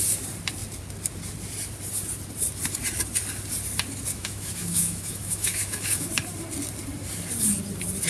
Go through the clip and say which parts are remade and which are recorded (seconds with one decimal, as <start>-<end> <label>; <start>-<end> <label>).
0.0-4.1 recorded; 4.1-6.1 remade; 6.1-8.1 recorded